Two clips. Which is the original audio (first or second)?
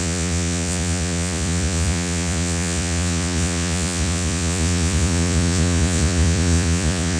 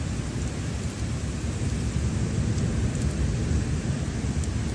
second